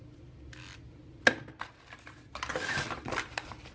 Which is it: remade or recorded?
recorded